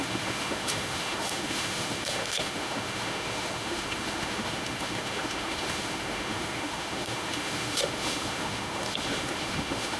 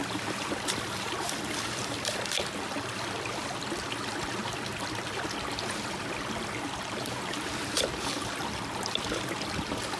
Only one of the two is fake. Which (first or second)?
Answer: first